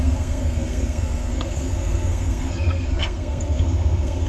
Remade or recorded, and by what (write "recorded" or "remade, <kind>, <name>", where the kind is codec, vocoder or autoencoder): remade, codec, SNAC